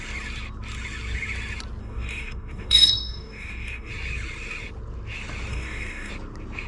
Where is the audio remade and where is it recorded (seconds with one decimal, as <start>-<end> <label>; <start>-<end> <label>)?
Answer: 0.0-1.8 recorded; 1.8-3.9 remade; 3.9-5.5 recorded; 5.5-6.1 remade; 6.1-6.7 recorded